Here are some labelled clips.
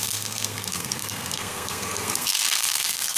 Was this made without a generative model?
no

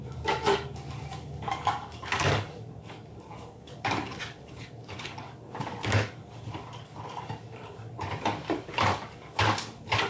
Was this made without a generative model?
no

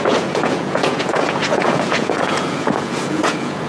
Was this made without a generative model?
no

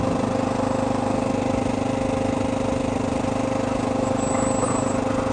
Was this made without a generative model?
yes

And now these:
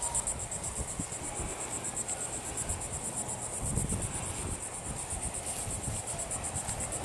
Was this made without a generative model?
yes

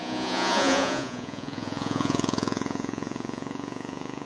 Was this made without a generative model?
no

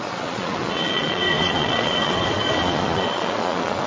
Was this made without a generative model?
no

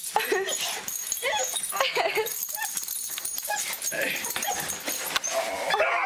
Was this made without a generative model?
yes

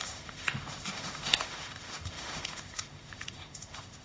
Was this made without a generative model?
no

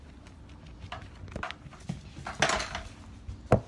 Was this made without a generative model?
yes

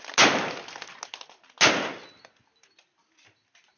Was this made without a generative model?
yes